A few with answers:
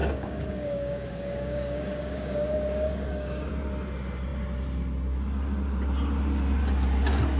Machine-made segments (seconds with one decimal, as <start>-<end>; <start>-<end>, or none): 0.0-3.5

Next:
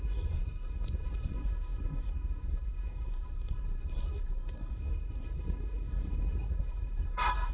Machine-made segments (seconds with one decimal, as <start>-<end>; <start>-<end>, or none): 0.0-7.5

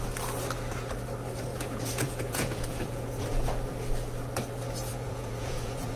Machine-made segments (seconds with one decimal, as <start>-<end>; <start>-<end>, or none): 1.5-3.5; 4.9-6.0